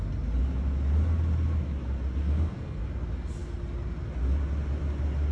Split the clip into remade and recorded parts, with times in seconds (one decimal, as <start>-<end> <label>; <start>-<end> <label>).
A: 0.0-2.2 recorded; 2.2-2.8 remade; 2.8-5.3 recorded